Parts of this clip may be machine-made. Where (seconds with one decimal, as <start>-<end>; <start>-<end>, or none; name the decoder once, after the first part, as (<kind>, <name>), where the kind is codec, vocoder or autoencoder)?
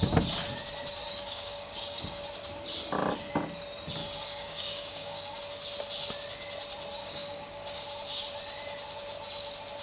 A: 1.0-2.2 (codec, DAC); 4.0-5.4; 7.0-7.8